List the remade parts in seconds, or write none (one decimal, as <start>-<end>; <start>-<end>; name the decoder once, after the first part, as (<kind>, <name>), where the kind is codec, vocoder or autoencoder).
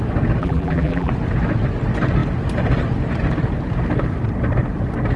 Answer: 0.4-1.1 (vocoder, BigVGAN v2)